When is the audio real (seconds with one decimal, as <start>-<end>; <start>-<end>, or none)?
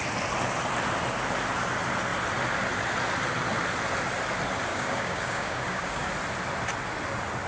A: 0.0-4.7; 6.1-7.5